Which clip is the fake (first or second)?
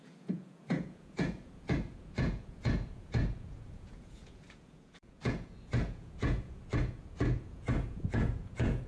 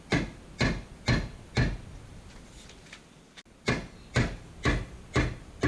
first